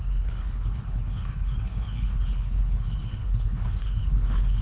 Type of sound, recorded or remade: remade